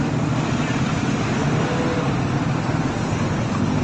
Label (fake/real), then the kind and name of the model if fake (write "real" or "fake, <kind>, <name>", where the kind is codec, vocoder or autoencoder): real